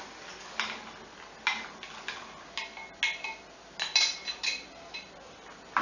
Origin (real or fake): real